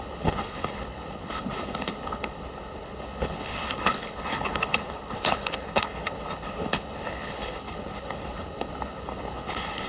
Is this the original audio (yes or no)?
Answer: no